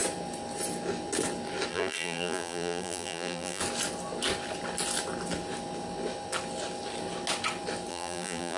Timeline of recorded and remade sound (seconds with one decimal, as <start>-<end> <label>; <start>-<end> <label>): 0.0-1.7 recorded; 1.7-3.6 remade; 3.6-7.9 recorded; 7.9-8.6 remade